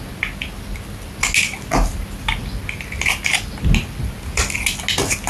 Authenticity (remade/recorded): recorded